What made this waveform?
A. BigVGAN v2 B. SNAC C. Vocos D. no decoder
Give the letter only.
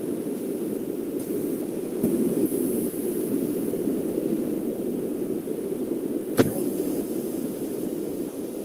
A